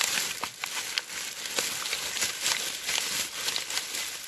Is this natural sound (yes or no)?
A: yes